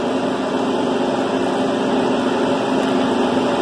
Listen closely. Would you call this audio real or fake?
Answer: real